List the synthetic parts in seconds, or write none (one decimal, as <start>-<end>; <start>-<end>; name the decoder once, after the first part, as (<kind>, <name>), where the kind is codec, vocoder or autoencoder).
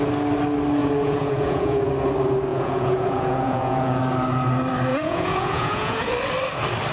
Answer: 0.8-1.9 (vocoder, Vocos); 2.5-4.0; 4.9-6.1